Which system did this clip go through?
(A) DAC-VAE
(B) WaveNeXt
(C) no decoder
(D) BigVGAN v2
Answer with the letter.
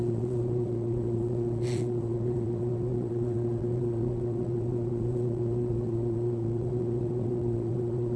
B